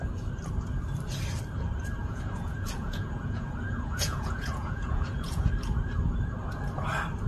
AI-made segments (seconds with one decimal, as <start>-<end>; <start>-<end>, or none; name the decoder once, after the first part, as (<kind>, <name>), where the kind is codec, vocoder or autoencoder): 2.0-5.5 (vocoder, Vocos)